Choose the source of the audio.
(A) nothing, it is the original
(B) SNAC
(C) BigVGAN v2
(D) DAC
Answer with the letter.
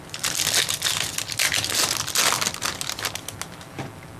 A